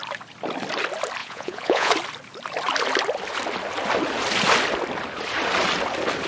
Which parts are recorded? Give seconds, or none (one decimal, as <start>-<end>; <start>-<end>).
0.0-1.2; 1.9-6.3